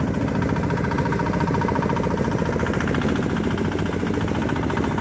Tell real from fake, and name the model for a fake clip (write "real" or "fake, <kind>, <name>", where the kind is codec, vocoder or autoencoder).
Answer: real